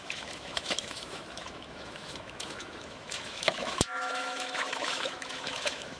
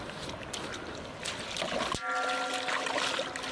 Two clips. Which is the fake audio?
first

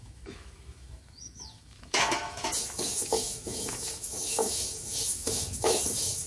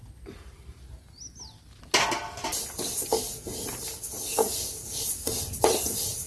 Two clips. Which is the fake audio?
first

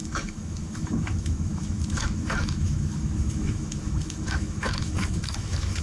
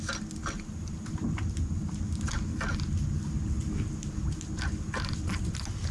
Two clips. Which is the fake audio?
first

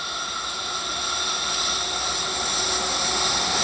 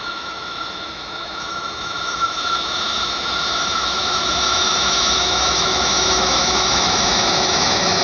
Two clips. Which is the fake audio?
second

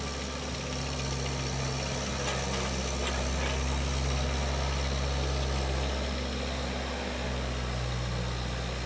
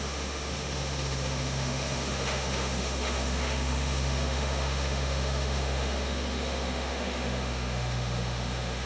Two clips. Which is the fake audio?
second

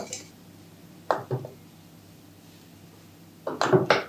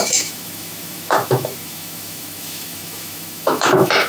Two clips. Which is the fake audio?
second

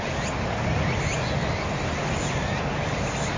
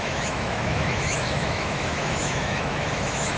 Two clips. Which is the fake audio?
second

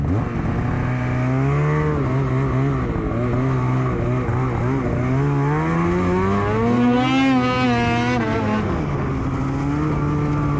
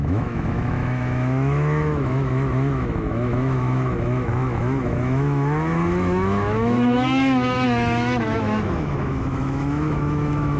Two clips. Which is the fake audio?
second